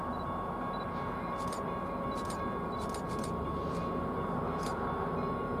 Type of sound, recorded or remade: recorded